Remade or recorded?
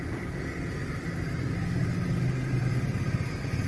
recorded